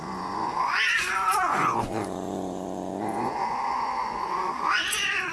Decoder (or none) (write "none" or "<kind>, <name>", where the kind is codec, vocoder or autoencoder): vocoder, Vocos